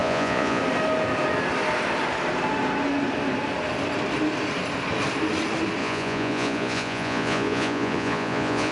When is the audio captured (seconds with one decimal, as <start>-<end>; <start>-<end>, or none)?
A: 0.6-5.8